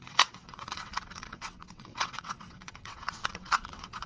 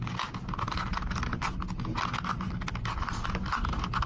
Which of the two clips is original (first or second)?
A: second